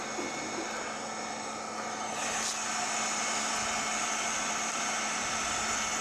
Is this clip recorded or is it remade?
recorded